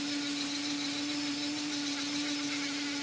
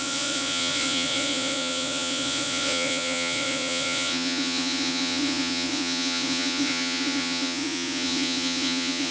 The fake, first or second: second